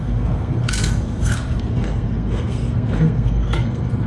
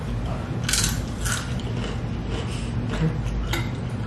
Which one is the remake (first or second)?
first